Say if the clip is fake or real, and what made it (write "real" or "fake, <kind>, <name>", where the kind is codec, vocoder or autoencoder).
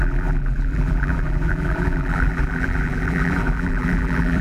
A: fake, vocoder, BigVGAN v2